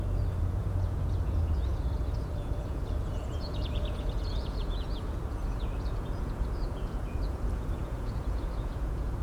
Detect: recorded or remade remade